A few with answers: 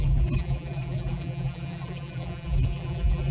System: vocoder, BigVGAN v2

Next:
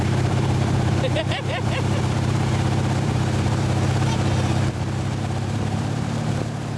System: vocoder, BigVGAN v2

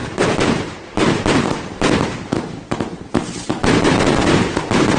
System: vocoder, BigVGAN v2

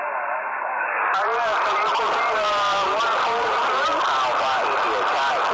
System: none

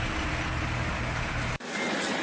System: none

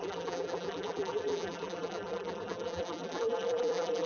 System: vocoder, BigVGAN v2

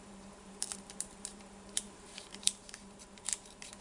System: vocoder, BigVGAN v2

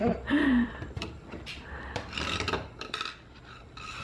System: vocoder, BigVGAN v2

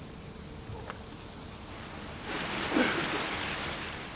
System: vocoder, BigVGAN v2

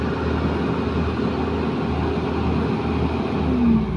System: none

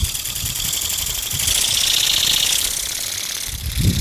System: none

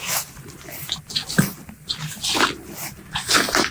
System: none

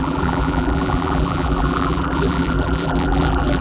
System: vocoder, BigVGAN v2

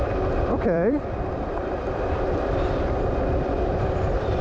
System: vocoder, BigVGAN v2